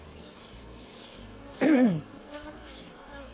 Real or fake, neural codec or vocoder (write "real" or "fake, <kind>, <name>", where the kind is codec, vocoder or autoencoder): fake, codec, SNAC